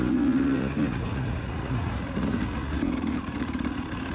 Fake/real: fake